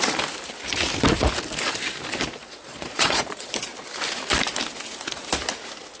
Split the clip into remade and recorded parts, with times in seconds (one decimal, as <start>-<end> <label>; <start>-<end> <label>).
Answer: 0.0-2.4 recorded; 2.4-3.5 remade; 3.5-6.0 recorded